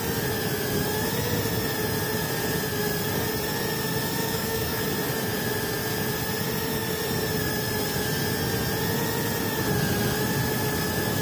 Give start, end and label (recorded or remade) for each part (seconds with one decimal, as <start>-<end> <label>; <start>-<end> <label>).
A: 0.0-4.2 recorded; 4.2-4.8 remade; 4.8-11.2 recorded

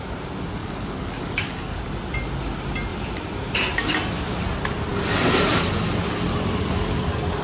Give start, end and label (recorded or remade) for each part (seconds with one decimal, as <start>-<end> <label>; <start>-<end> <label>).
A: 0.0-0.6 recorded; 0.6-1.8 remade; 1.8-7.4 recorded